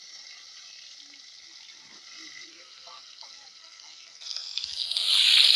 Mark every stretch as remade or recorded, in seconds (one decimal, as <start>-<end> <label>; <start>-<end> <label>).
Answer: 0.0-2.5 recorded; 2.5-5.1 remade; 5.1-5.6 recorded